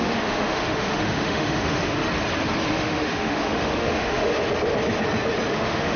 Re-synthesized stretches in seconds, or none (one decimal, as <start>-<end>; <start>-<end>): 0.0-2.0; 2.7-4.3; 5.5-6.0